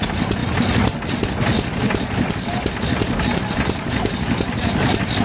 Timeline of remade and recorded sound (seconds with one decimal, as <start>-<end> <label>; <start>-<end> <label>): 0.0-5.2 recorded